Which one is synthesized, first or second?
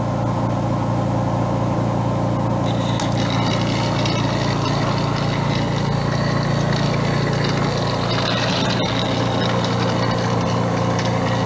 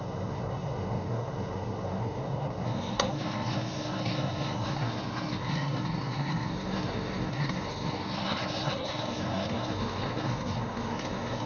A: second